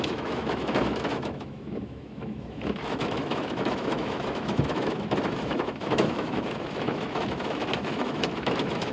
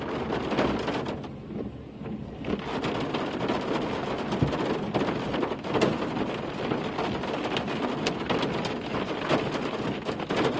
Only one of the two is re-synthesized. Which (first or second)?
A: first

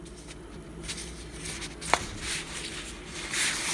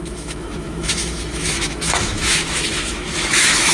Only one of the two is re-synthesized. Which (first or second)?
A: second